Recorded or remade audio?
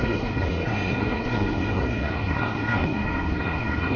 remade